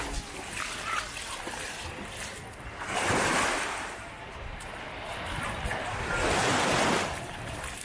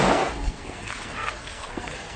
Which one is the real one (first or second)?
first